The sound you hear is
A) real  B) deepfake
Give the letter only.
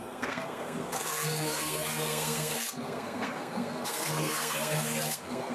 B